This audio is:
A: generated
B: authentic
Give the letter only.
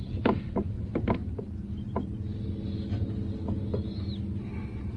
B